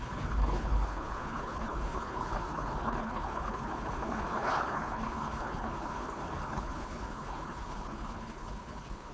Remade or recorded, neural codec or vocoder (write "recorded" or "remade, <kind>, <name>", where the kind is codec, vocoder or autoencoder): remade, codec, HILCodec